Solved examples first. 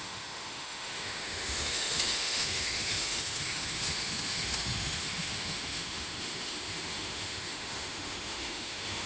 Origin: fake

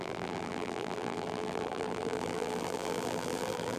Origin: fake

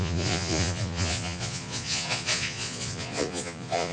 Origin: fake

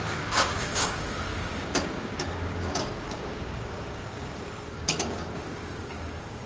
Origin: fake